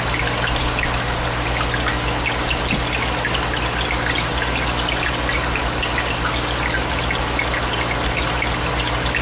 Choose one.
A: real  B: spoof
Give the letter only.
A